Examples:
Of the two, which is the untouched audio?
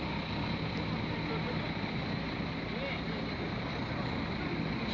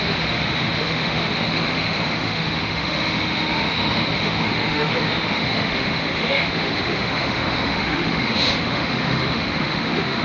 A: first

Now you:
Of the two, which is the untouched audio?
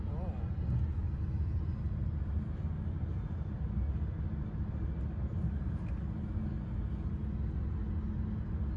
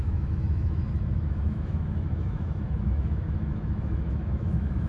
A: first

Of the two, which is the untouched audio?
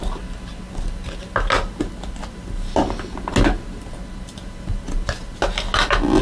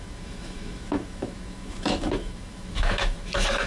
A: first